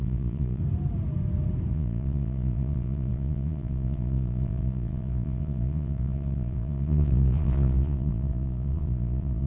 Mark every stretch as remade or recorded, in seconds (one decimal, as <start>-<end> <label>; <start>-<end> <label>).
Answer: 0.0-0.6 remade; 0.6-1.7 recorded; 1.7-9.5 remade

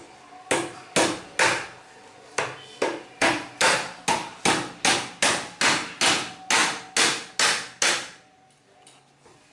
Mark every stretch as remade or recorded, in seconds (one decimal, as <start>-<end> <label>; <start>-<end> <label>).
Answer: 0.0-9.5 recorded

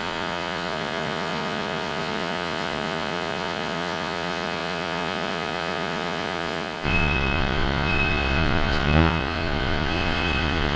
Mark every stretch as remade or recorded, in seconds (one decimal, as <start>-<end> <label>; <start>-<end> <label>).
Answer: 0.0-10.8 remade

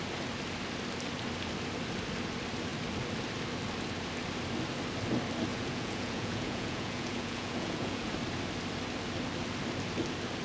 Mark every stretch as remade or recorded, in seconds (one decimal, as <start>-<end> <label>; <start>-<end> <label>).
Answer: 0.0-5.5 recorded; 5.5-8.1 remade; 8.1-10.4 recorded

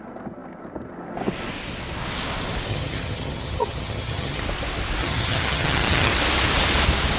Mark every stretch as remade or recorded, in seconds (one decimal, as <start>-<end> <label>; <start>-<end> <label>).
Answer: 0.0-2.7 recorded; 2.7-4.4 remade; 4.4-5.0 recorded; 5.0-6.1 remade; 6.1-7.2 recorded